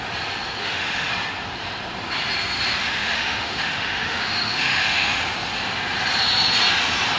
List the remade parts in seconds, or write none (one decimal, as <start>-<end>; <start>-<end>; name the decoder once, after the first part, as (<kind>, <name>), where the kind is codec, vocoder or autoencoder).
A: 0.6-1.1 (autoencoder, DAC-VAE); 2.8-5.2